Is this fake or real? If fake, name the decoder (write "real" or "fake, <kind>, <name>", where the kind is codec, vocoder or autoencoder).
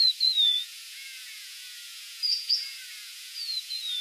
fake, vocoder, Vocos